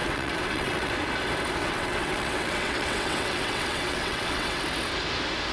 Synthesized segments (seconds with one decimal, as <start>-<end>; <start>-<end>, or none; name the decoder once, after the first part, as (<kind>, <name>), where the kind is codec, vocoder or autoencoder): 0.0-0.9 (vocoder, WaveNeXt); 1.6-4.6